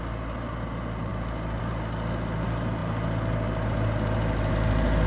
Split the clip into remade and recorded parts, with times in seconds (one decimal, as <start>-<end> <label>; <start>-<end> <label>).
0.0-5.1 recorded